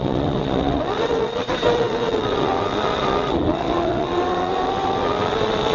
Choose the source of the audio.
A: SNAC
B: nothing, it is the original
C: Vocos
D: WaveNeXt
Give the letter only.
D